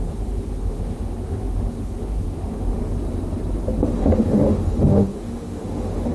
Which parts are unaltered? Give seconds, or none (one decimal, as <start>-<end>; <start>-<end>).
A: 2.8-4.0